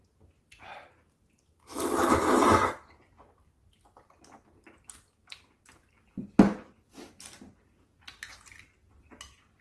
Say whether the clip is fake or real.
real